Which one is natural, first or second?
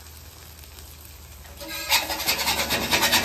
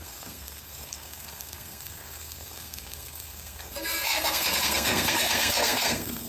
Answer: first